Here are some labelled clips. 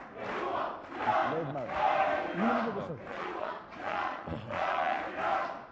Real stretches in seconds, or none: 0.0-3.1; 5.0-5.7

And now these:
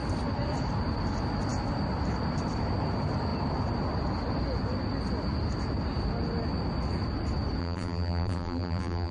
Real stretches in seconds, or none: 0.0-7.6

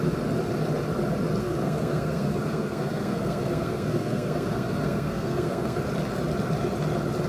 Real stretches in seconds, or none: 0.0-1.4; 5.8-7.3

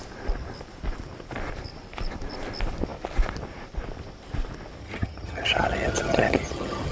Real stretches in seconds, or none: 0.0-4.8

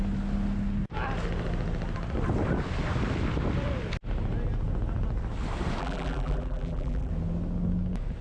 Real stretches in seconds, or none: 0.0-5.8; 7.1-8.2

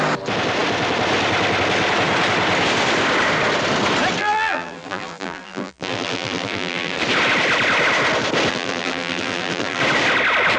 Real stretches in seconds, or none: 0.0-4.2; 7.0-8.5; 9.8-10.6

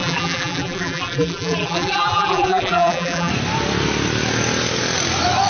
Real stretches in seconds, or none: 3.3-5.5